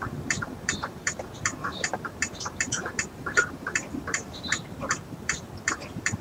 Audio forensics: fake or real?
fake